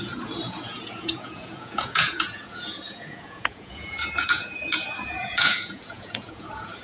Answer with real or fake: fake